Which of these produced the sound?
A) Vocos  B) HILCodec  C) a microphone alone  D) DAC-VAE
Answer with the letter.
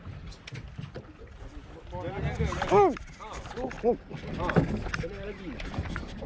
C